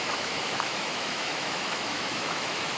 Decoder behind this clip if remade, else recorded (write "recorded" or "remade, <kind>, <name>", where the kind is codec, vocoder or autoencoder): remade, autoencoder, DAC-VAE